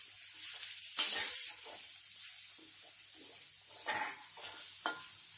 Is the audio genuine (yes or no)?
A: yes